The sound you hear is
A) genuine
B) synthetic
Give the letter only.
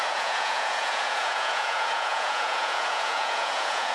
B